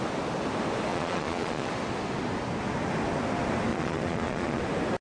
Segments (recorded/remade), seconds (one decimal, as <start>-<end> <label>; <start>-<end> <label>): 0.0-0.9 recorded; 0.9-1.7 remade; 1.7-3.7 recorded; 3.7-4.6 remade; 4.6-5.0 recorded